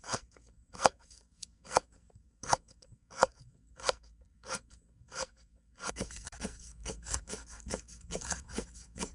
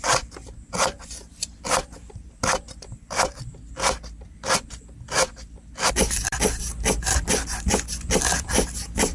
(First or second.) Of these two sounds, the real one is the second